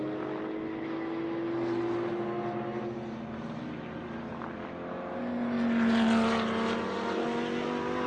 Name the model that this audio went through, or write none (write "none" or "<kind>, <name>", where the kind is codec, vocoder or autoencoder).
none